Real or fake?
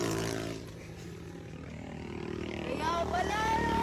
fake